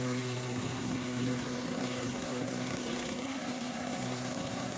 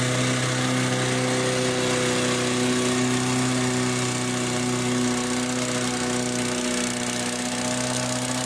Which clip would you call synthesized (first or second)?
first